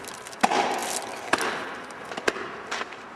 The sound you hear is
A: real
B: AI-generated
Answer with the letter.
A